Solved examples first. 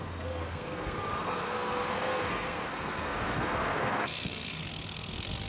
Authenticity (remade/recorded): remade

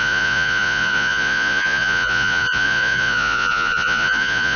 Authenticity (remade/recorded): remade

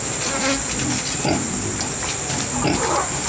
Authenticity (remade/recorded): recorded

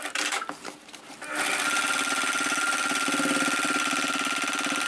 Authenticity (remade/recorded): recorded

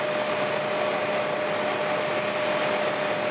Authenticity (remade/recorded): recorded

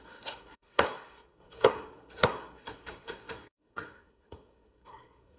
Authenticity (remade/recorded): remade